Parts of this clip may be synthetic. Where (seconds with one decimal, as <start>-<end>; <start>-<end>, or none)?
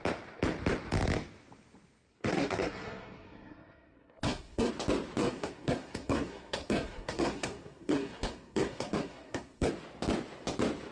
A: 2.1-4.7; 5.2-9.7